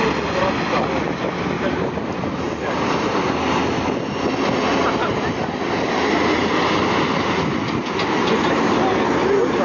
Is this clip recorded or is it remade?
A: recorded